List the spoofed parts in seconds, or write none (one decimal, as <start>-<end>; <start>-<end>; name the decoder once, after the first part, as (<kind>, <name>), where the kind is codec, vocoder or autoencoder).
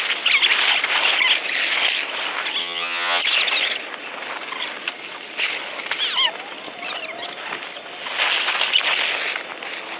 2.6-3.2 (vocoder, HiFi-GAN)